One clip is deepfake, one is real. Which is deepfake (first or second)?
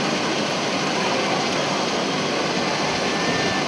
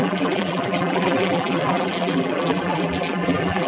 second